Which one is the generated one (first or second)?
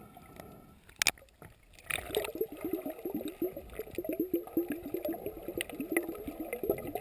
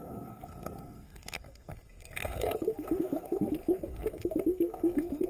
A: second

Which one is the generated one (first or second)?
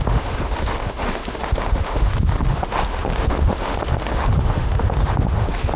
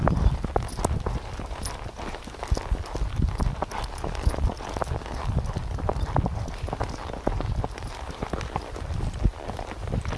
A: first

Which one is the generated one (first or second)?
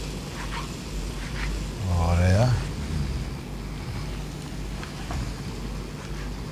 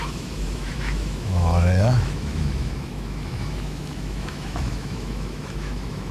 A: second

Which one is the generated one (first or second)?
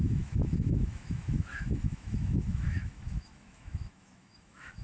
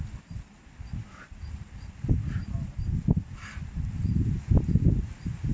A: first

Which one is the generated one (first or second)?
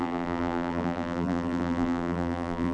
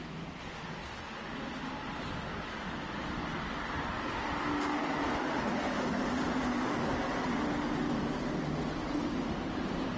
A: first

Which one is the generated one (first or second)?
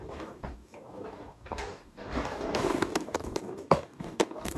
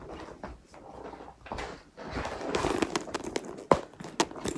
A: first